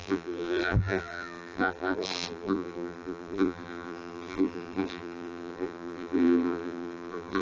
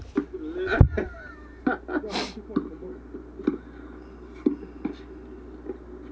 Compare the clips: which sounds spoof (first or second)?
first